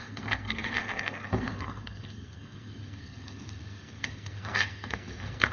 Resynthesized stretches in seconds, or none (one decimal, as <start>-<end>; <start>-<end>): 0.0-5.5